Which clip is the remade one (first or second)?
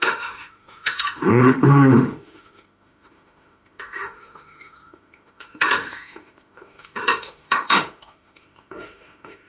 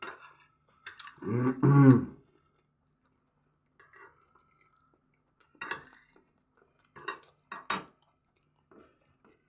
first